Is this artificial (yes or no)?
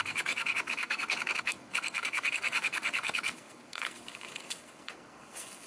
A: yes